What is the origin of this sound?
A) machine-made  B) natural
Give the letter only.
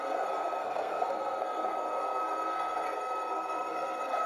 A